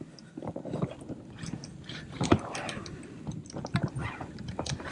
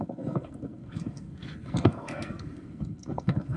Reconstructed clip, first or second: second